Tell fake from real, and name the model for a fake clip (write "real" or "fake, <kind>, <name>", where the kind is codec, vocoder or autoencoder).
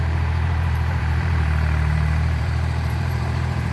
fake, vocoder, BigVGAN v2